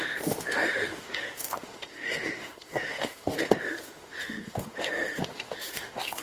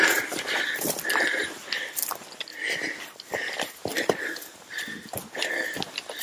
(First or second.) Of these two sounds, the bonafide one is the second